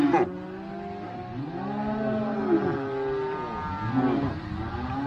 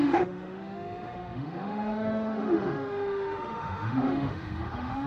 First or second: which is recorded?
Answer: first